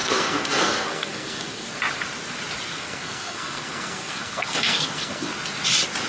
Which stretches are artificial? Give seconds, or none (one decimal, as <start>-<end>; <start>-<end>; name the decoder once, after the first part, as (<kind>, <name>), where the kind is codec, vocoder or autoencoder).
0.0-1.8 (codec, SNAC); 2.7-5.3